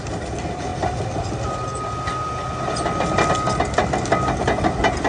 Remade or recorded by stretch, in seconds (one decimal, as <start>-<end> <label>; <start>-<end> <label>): 0.0-5.1 recorded